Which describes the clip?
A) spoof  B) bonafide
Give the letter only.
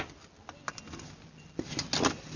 B